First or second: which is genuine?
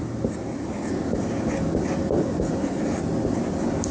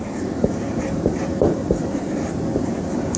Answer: first